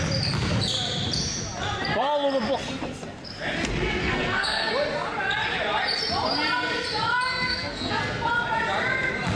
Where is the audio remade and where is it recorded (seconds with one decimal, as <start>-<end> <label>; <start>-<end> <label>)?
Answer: 0.0-4.0 recorded; 4.0-4.7 remade; 4.7-7.3 recorded; 7.3-8.3 remade; 8.3-9.4 recorded